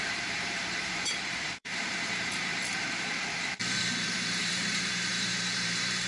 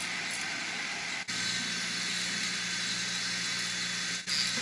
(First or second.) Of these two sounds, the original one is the second